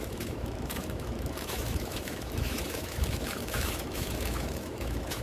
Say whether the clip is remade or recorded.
remade